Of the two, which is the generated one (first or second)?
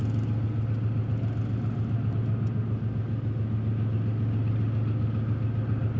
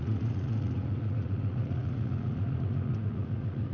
second